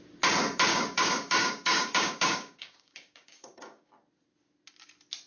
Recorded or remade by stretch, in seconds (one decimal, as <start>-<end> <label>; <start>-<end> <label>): 0.0-0.7 recorded; 0.7-3.9 remade; 3.9-5.3 recorded